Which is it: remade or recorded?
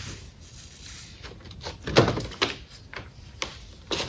recorded